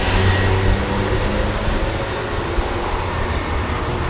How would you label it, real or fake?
real